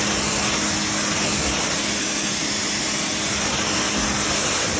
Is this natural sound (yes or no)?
yes